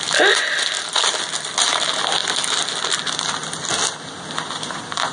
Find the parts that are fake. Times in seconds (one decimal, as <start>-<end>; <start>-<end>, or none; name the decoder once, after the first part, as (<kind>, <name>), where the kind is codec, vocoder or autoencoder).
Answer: none